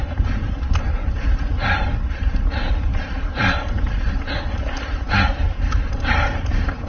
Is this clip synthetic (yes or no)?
yes